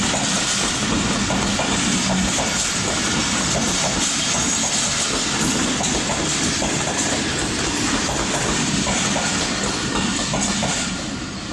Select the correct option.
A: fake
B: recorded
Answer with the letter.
B